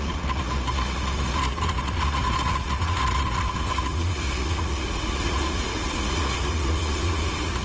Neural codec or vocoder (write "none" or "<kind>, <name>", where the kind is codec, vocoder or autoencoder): vocoder, Vocos